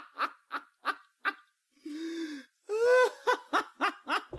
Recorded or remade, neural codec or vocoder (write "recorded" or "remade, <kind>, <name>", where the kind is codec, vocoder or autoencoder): recorded